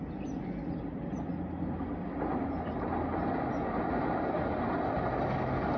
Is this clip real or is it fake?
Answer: real